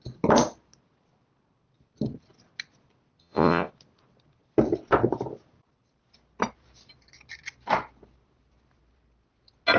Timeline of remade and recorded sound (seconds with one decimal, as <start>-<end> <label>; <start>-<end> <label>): 0.0-3.2 recorded; 3.2-3.7 remade; 3.7-9.8 recorded